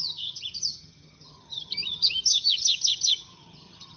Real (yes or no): no